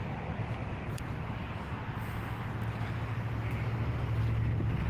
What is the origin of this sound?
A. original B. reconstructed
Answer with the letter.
A